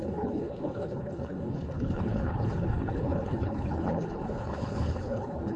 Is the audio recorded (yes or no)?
no